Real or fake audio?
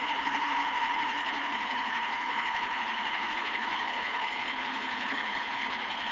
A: fake